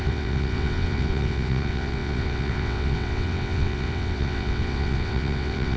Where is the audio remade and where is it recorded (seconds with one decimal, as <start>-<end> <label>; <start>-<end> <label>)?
0.0-5.8 remade